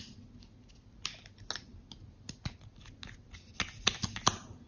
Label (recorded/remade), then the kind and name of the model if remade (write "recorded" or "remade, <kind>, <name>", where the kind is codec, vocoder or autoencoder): recorded